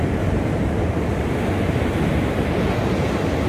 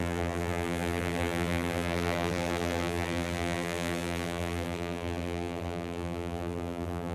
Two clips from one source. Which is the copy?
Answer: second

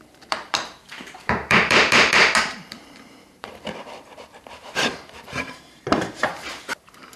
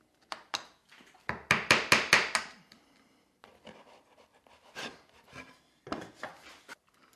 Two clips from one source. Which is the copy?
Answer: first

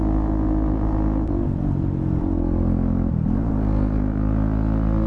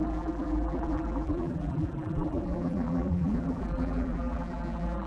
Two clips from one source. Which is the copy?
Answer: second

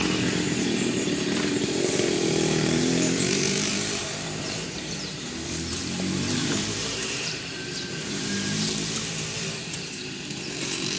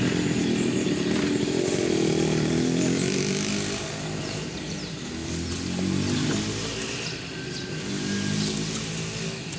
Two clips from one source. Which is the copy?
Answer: first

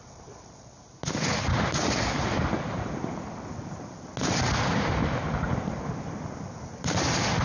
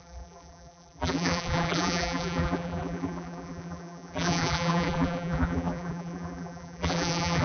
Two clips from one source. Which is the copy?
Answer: second